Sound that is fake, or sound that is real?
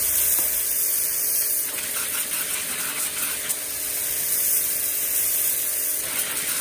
real